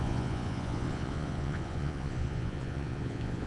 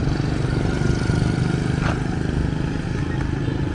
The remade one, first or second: first